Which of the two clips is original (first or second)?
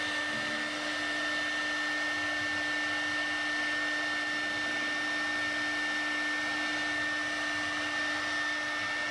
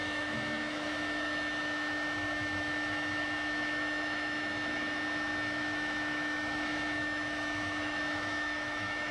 first